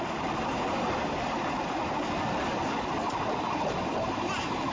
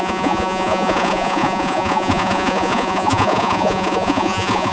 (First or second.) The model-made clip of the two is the second